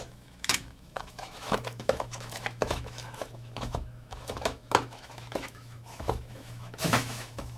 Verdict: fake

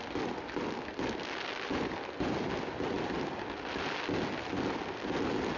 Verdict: real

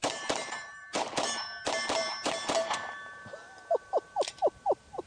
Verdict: fake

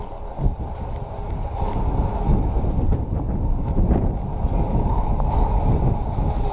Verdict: real